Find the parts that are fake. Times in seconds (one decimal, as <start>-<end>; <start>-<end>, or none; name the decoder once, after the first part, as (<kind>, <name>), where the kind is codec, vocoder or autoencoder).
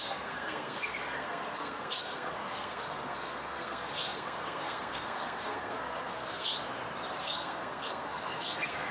0.0-6.5 (codec, SNAC); 7.2-8.9